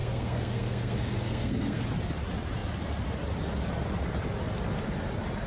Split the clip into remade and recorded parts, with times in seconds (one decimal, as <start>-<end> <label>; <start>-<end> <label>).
0.0-1.8 remade; 1.8-5.5 recorded